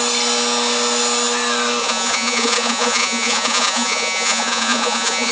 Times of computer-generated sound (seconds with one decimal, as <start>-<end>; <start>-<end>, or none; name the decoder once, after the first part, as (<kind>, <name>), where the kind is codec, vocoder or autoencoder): 1.8-5.3 (vocoder, Vocos)